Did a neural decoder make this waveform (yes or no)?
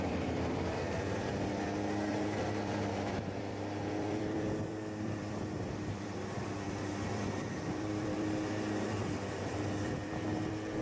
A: yes